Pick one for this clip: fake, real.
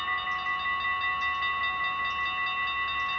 real